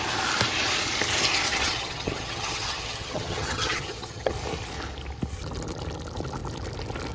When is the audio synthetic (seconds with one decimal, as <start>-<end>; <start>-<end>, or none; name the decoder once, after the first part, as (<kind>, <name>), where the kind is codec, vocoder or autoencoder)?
1.5-4.3 (vocoder, HiFi-GAN)